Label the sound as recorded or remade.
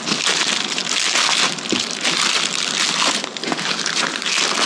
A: recorded